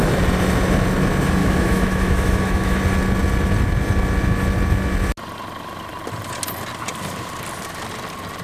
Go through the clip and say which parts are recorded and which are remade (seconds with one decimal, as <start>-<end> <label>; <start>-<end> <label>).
0.0-1.4 recorded; 1.4-2.8 remade; 2.8-8.4 recorded